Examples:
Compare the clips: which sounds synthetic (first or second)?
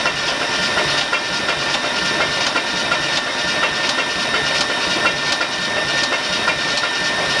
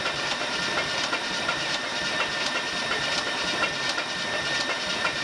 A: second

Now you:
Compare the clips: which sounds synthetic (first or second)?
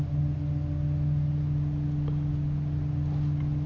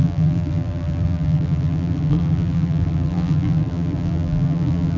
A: second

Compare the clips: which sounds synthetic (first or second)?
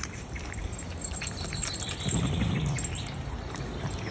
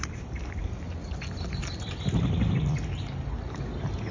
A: first